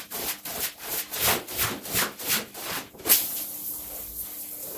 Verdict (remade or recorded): recorded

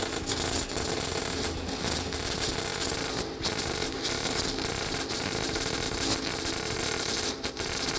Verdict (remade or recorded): recorded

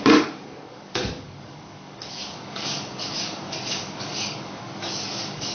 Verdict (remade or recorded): remade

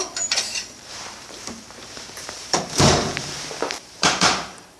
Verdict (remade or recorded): remade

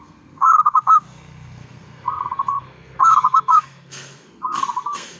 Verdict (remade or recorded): remade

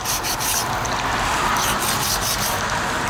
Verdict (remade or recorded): recorded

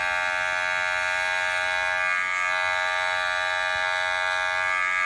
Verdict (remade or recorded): recorded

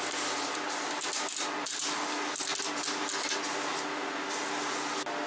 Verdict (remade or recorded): recorded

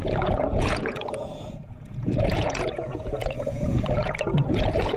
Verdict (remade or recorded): remade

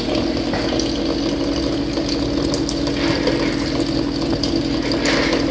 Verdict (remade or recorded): remade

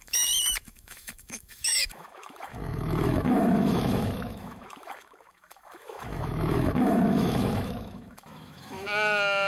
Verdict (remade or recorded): remade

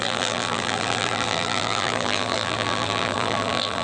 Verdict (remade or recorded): remade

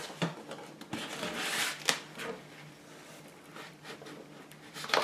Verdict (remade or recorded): recorded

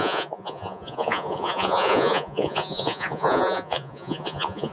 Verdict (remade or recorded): remade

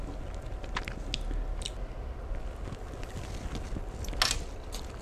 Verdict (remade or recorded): recorded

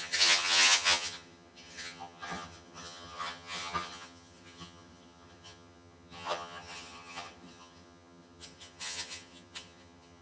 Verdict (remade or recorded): remade